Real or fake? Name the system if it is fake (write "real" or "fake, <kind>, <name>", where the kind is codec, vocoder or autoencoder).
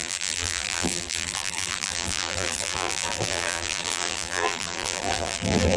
fake, vocoder, BigVGAN v2